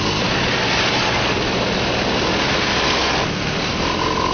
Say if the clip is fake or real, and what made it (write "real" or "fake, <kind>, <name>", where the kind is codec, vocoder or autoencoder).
real